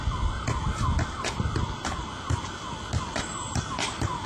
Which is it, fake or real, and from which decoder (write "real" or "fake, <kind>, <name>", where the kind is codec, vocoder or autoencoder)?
real